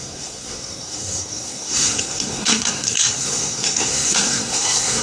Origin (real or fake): fake